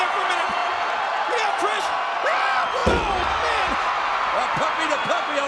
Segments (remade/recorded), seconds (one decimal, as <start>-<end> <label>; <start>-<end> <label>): 0.0-5.5 recorded

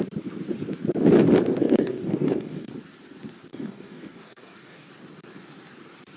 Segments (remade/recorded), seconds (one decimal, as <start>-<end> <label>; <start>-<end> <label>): 0.0-1.6 recorded; 1.6-2.7 remade; 2.7-3.5 recorded; 3.5-4.9 remade; 4.9-6.2 recorded

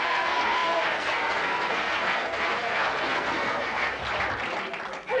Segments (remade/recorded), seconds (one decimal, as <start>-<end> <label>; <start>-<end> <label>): 0.0-4.0 remade; 4.0-5.2 recorded